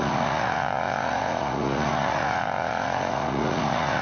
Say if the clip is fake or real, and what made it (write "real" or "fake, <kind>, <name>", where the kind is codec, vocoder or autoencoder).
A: fake, vocoder, Vocos